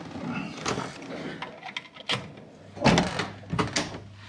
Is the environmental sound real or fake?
real